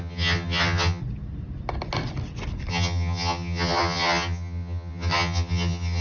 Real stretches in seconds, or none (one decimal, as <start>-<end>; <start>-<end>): 1.0-2.7